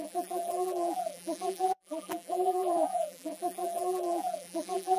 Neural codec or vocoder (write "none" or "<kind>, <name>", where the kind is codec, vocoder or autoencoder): vocoder, BigVGAN v2